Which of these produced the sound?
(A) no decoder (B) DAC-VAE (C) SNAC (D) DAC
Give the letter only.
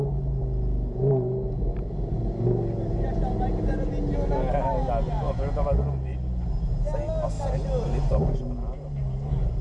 A